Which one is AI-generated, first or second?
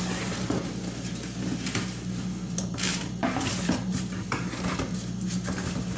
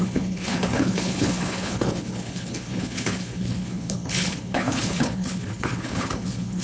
second